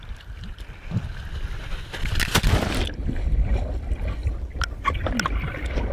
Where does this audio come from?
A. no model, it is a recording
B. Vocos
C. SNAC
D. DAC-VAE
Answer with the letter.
A